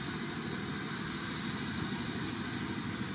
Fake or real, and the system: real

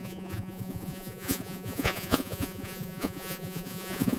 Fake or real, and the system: fake, vocoder, Vocos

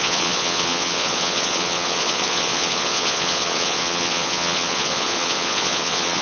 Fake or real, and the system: fake, vocoder, Vocos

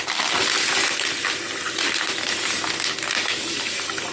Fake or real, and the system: real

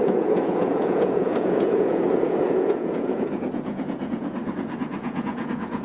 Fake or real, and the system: fake, vocoder, Vocos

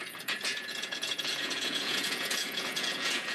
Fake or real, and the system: fake, vocoder, Vocos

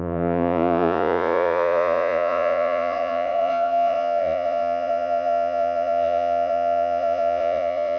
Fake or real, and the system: fake, vocoder, Vocos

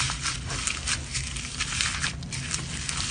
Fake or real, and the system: real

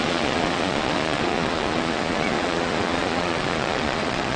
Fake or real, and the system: fake, vocoder, Vocos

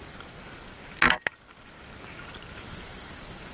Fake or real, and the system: real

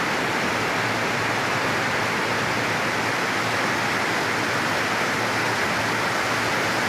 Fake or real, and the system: real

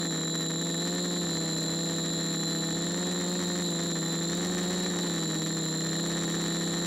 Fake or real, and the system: real